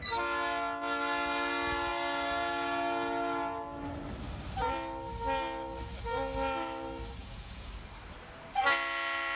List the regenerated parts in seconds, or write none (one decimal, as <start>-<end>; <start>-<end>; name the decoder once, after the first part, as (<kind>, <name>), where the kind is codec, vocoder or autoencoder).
7.2-7.7 (vocoder, Vocos)